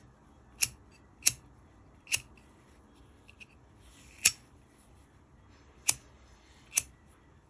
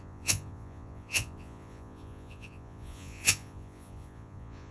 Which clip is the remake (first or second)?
second